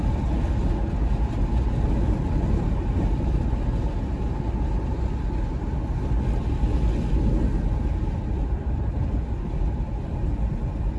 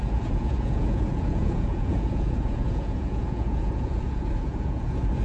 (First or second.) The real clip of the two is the first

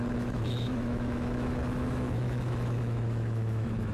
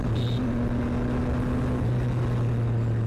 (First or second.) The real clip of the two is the second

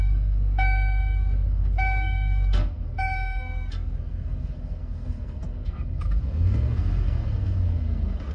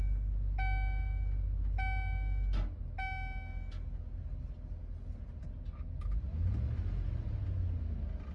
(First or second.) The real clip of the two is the second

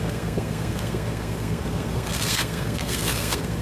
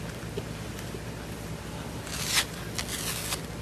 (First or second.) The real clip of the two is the second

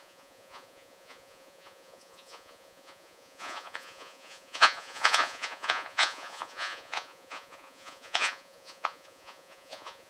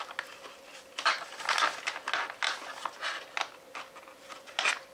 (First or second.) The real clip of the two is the second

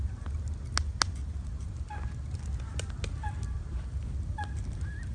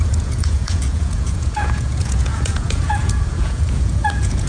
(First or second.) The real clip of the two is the first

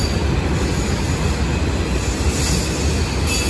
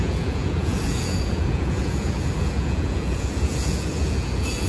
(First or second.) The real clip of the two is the first